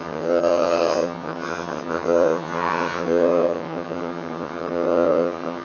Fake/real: fake